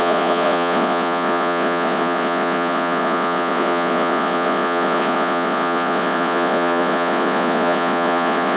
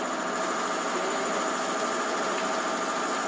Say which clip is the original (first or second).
second